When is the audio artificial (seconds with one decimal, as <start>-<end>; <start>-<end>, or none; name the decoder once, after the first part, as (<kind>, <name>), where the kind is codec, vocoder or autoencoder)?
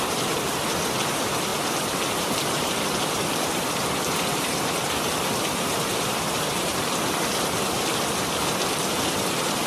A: 0.0-9.7 (vocoder, BigVGAN v2)